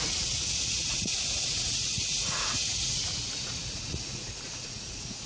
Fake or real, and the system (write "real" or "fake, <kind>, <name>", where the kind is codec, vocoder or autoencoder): fake, vocoder, Vocos